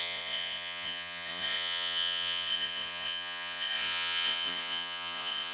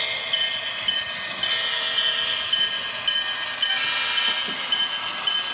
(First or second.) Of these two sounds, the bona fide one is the second